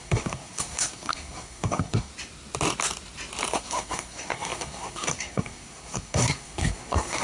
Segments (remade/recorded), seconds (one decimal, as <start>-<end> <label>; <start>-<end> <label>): 0.0-2.1 remade; 2.1-3.5 recorded; 3.5-7.2 remade